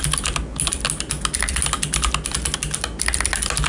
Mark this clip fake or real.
real